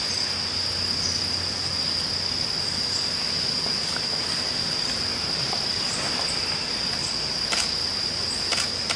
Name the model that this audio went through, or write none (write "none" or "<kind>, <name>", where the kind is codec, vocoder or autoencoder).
none